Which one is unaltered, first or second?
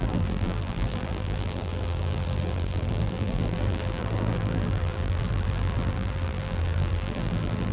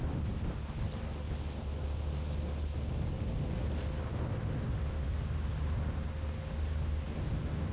second